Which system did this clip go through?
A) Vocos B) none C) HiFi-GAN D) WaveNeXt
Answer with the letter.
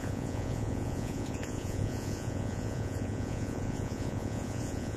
A